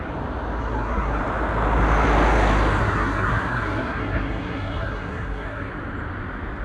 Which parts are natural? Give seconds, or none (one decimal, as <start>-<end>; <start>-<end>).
0.0-0.6; 1.2-2.8; 5.7-6.6